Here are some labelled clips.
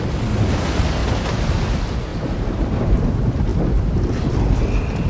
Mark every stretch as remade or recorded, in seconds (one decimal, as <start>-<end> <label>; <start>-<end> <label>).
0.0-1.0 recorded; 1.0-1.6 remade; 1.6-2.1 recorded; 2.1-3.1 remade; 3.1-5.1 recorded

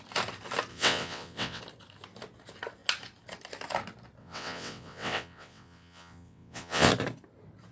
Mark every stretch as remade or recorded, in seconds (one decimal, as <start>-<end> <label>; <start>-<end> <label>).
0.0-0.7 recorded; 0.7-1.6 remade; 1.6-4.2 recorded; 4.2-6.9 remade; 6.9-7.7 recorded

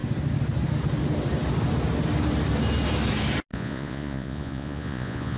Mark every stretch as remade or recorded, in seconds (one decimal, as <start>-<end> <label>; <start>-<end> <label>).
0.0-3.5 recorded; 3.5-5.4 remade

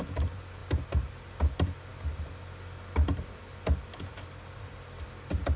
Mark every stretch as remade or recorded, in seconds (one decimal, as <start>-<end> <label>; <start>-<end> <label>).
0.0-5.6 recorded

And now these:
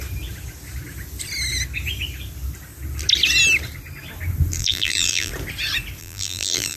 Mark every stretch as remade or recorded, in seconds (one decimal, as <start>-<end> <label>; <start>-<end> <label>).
0.0-4.6 recorded; 4.6-5.3 remade; 5.3-6.0 recorded; 6.0-6.8 remade

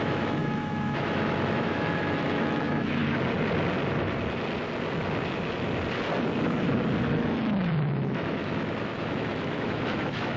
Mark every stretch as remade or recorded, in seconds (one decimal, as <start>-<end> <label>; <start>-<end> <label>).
0.0-3.0 remade; 3.0-7.1 recorded; 7.1-10.4 remade